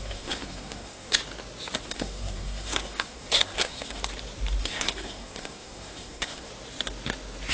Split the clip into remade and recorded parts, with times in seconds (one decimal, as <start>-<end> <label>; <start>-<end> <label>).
0.0-1.2 remade; 1.2-1.8 recorded; 1.8-4.0 remade; 4.0-4.6 recorded; 4.6-6.5 remade; 6.5-7.5 recorded